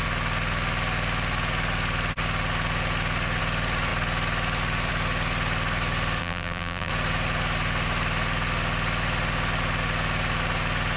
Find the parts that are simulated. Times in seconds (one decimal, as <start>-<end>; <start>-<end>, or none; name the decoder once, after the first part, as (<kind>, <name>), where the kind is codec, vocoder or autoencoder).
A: 6.2-6.9 (vocoder, BigVGAN v2)